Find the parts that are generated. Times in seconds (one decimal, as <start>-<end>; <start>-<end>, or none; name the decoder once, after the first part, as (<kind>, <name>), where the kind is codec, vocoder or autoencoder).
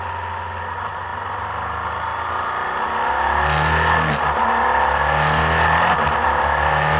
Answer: none